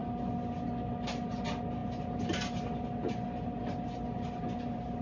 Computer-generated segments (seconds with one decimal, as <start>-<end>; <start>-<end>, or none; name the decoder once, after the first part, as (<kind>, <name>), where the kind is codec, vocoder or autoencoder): none